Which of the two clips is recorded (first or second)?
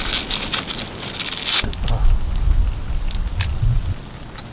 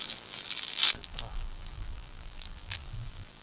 first